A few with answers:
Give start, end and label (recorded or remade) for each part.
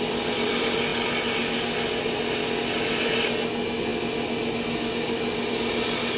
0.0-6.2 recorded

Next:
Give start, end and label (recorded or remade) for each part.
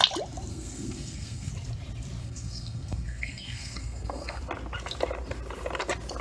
0.0-0.5 recorded; 0.5-1.5 remade; 1.5-2.2 recorded; 2.2-4.4 remade; 4.4-6.2 recorded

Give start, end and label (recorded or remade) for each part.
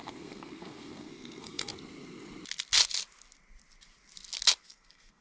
0.0-1.7 remade; 1.7-4.6 recorded; 4.6-5.2 remade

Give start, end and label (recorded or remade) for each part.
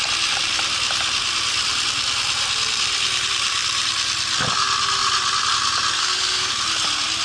0.0-6.0 recorded; 6.0-6.5 remade; 6.5-7.2 recorded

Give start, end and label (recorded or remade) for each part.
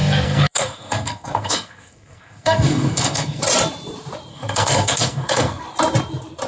0.0-3.4 remade; 3.4-4.3 recorded; 4.3-5.6 remade; 5.6-6.5 recorded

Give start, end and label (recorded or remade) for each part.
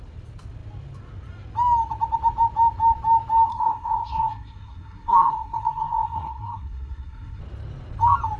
0.0-3.5 recorded; 3.5-7.4 remade; 7.4-8.4 recorded